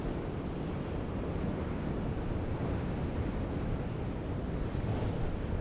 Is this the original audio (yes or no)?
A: yes